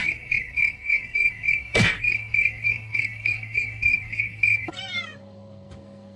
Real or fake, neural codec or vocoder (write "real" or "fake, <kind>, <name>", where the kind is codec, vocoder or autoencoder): fake, codec, SNAC